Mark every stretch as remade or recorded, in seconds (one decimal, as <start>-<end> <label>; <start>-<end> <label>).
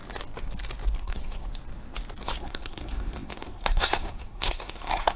0.0-1.0 recorded; 1.0-1.5 remade; 1.5-2.2 recorded; 2.2-5.2 remade